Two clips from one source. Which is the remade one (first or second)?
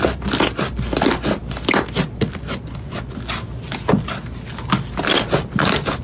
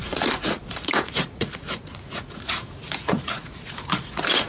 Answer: second